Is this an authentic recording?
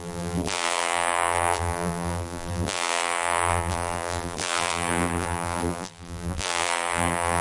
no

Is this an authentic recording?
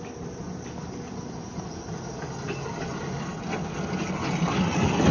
yes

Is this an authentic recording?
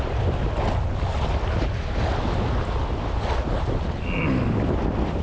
yes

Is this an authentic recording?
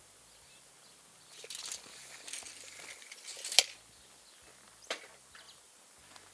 yes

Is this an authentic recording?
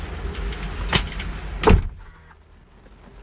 yes